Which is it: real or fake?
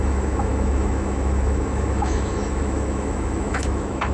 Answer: fake